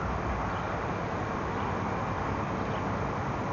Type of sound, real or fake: real